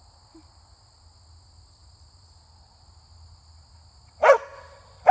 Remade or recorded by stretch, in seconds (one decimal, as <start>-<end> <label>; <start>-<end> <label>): 0.0-5.1 recorded